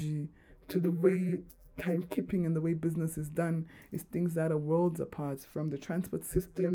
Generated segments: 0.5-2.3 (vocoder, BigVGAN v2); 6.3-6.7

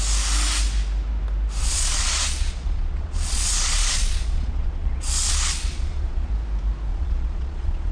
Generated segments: 1.6-6.3 (vocoder, Vocos); 6.9-7.9

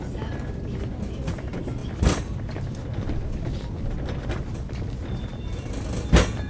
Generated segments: 1.8-5.7 (vocoder, BigVGAN v2)

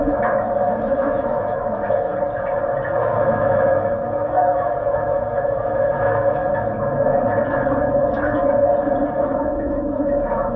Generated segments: 0.0-2.1 (autoencoder, DAC-VAE); 3.0-6.4; 9.1-10.6